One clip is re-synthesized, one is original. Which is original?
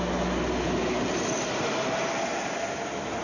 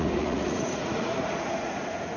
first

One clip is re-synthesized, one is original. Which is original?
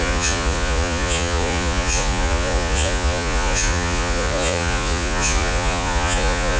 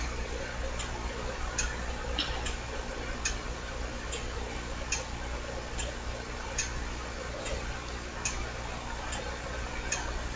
second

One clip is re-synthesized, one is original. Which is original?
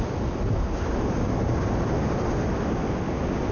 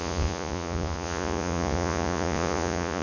first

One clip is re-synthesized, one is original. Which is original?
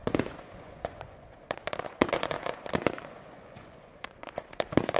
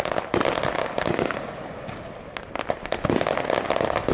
second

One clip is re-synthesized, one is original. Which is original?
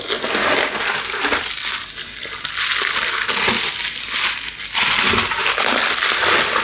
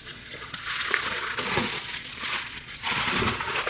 first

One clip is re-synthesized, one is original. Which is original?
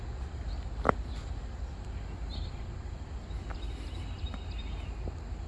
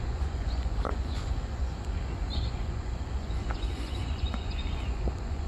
first